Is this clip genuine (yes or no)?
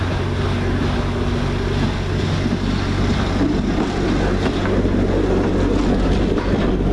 yes